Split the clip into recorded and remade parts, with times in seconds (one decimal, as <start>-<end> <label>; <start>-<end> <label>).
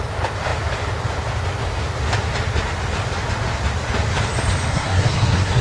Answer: 0.0-4.7 recorded; 4.7-5.6 remade